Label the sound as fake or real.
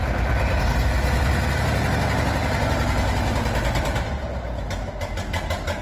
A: real